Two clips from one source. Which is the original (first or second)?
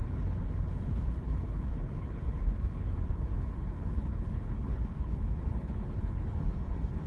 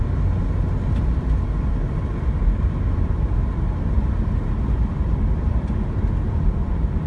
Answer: second